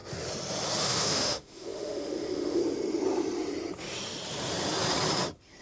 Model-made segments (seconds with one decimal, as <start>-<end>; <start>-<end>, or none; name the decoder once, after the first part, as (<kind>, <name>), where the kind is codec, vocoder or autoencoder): 0.8-2.6 (autoencoder, DAC-VAE)